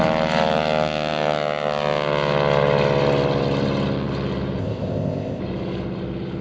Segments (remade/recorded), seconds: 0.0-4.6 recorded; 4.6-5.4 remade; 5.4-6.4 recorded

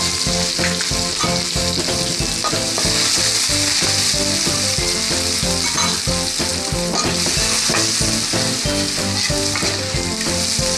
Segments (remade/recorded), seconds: 0.0-10.8 recorded

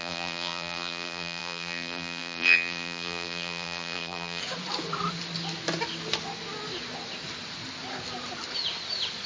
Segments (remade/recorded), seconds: 0.0-4.4 remade; 4.4-9.3 recorded

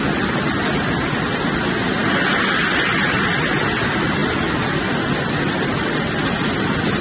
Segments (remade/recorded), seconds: 0.0-7.0 recorded

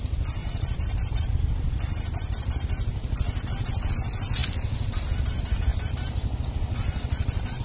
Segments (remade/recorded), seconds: 0.0-0.4 recorded; 0.4-3.9 remade; 3.9-4.4 recorded; 4.4-5.0 remade; 5.0-7.6 recorded